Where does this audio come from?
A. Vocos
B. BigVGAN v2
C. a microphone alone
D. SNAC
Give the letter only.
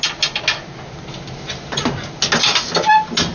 C